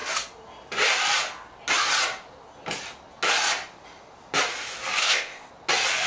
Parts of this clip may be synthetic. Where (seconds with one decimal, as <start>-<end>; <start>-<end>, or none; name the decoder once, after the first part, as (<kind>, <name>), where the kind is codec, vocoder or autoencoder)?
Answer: 5.0-5.5 (codec, ZipCodec)